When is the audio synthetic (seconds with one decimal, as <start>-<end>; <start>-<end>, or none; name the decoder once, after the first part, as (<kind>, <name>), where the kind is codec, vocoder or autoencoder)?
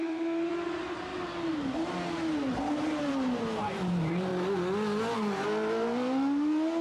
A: 0.0-1.1 (vocoder, BigVGAN v2); 3.6-4.3